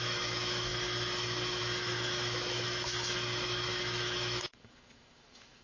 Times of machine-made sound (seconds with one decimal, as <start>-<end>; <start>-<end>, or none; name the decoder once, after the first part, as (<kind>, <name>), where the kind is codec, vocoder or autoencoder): 0.0-0.7 (autoencoder, DAC-VAE); 1.6-5.6